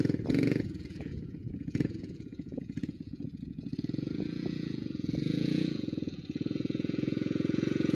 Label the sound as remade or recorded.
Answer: remade